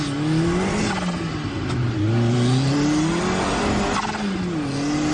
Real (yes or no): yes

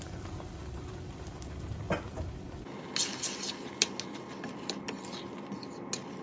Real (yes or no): yes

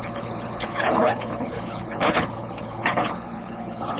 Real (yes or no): no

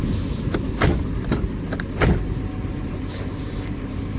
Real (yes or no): yes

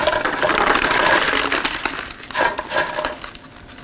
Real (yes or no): yes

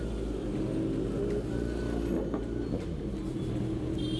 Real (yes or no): yes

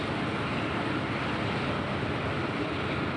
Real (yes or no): yes